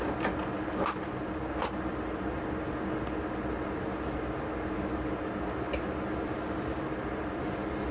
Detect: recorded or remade recorded